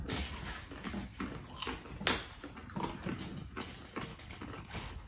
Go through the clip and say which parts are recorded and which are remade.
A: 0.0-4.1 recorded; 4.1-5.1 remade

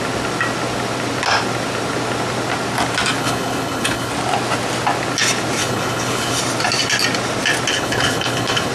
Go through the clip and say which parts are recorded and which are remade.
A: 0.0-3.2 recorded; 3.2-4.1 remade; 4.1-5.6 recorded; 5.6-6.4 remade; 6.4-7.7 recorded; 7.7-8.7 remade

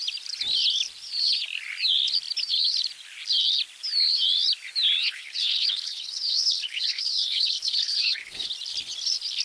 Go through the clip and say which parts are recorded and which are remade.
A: 0.0-5.0 recorded; 5.0-8.5 remade; 8.5-9.4 recorded

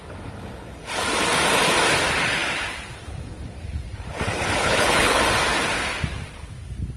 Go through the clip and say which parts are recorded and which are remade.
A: 0.0-4.6 recorded; 4.6-5.2 remade; 5.2-7.0 recorded

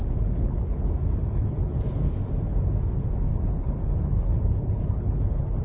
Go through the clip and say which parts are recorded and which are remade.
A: 0.0-0.9 remade; 0.9-1.3 recorded; 1.3-2.2 remade; 2.2-3.3 recorded; 3.3-5.6 remade